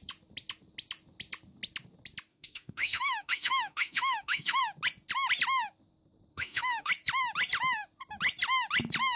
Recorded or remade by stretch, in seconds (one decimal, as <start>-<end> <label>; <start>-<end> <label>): 0.0-2.3 recorded; 2.3-4.6 remade; 4.6-6.3 recorded; 6.3-6.9 remade; 6.9-9.2 recorded